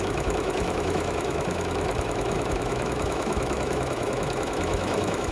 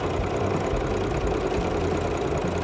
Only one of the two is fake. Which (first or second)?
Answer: first